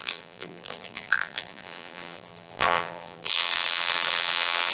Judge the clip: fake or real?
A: fake